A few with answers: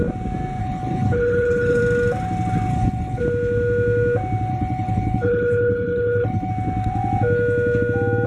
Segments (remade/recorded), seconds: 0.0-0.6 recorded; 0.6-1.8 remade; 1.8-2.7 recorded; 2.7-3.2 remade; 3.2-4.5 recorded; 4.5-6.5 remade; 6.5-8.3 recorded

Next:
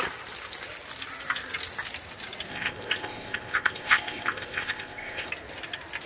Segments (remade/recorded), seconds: 0.0-2.5 recorded; 2.5-5.3 remade; 5.3-6.1 recorded

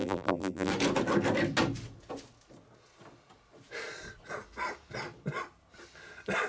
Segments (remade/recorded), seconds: 0.0-0.7 remade; 0.7-6.5 recorded

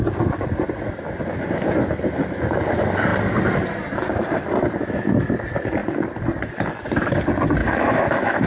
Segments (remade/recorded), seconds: 0.0-7.6 recorded; 7.6-8.5 remade

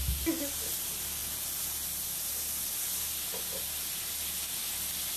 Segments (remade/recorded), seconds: 0.0-5.2 recorded